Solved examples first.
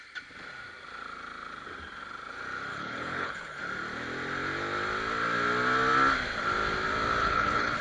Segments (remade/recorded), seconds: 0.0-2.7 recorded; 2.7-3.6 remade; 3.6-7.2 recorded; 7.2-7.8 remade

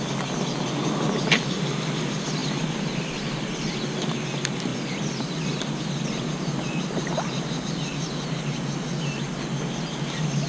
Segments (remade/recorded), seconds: 0.0-2.4 recorded; 2.4-3.1 remade; 3.1-4.7 recorded; 4.7-7.6 remade; 7.6-10.5 recorded

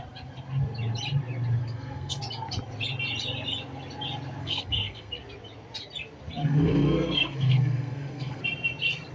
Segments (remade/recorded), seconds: 0.0-1.6 recorded; 1.6-2.2 remade; 2.2-4.4 recorded; 4.4-5.1 remade; 5.1-6.4 recorded; 6.4-8.4 remade; 8.4-9.1 recorded

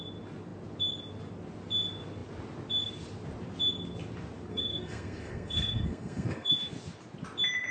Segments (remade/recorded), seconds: 0.0-4.5 recorded; 4.5-6.5 remade; 6.5-7.7 recorded

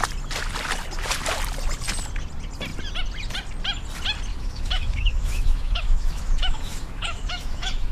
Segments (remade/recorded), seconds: 0.0-4.3 recorded; 4.3-7.9 remade

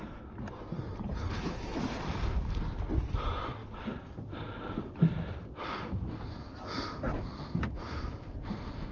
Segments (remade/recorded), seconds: 0.0-1.1 recorded; 1.1-1.8 remade; 1.8-8.9 recorded